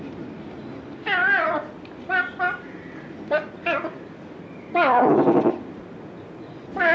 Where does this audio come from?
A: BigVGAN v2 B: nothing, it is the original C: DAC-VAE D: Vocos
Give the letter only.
B